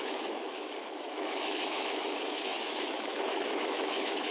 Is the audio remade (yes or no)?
yes